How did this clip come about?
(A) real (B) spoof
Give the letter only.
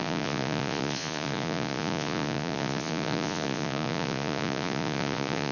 B